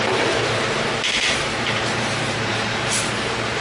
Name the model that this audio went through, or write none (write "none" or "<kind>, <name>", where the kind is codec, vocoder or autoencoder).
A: vocoder, BigVGAN v2